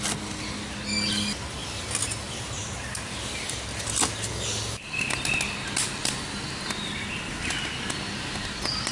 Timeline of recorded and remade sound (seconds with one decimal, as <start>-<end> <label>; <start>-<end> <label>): 0.0-8.9 recorded